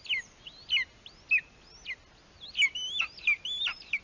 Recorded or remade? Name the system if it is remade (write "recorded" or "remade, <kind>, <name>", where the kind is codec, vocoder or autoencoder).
recorded